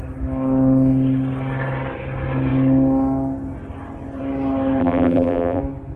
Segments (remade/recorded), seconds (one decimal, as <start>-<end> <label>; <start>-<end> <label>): 0.0-4.8 recorded; 4.8-5.6 remade; 5.6-6.0 recorded